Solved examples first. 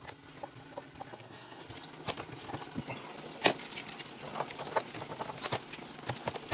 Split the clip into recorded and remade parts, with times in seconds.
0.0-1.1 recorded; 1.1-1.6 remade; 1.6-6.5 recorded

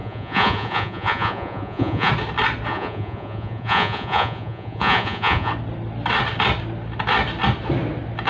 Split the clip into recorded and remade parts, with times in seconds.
0.0-2.1 remade; 2.1-2.7 recorded; 2.7-5.5 remade; 5.5-8.3 recorded

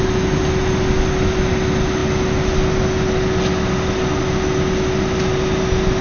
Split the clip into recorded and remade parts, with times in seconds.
0.0-6.0 recorded